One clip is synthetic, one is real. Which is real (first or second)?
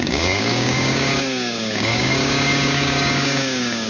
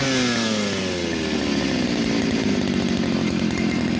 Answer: second